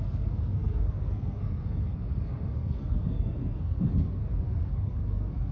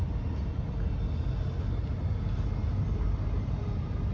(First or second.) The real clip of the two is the second